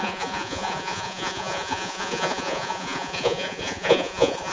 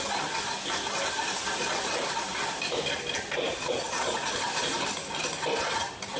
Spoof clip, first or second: first